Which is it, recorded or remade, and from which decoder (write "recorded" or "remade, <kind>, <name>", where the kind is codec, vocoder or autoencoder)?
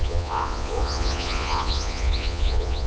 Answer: remade, vocoder, Vocos